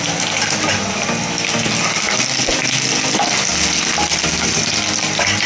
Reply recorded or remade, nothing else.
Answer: recorded